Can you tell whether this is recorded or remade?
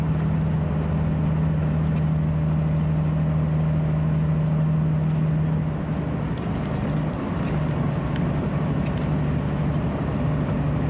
recorded